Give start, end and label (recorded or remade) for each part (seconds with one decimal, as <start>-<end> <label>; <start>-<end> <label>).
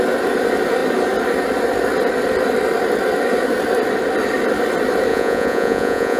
0.0-5.1 recorded; 5.1-6.2 remade